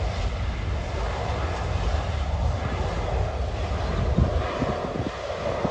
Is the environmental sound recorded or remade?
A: recorded